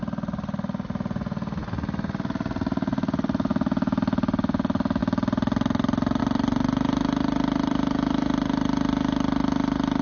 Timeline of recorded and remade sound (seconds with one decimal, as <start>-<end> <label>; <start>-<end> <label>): 0.0-10.0 recorded